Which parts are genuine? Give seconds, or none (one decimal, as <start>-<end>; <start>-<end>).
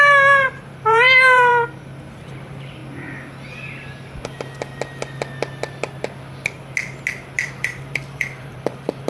1.5-2.1; 2.8-7.5